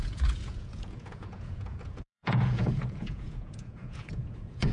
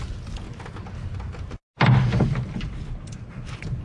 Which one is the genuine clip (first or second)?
second